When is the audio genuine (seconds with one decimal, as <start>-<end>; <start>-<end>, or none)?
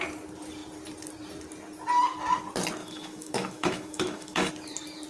0.0-2.8; 4.5-5.1